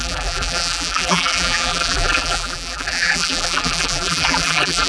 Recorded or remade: remade